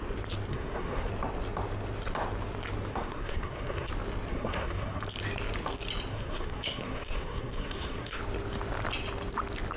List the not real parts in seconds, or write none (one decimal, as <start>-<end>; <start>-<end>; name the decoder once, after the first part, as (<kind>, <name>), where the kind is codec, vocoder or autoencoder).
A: 0.5-1.1 (codec, SNAC); 2.9-3.9; 4.3-5.0; 6.1-8.2